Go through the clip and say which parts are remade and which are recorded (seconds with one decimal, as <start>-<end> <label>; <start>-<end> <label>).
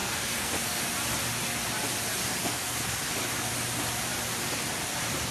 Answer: 0.0-0.8 remade; 0.8-2.4 recorded; 2.4-3.0 remade; 3.0-5.3 recorded